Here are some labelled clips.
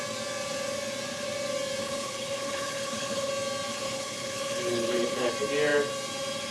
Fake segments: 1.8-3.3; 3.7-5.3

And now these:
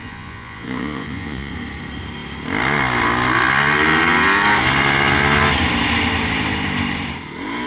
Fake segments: 0.0-1.5